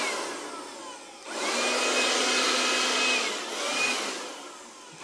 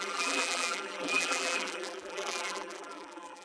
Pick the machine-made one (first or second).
second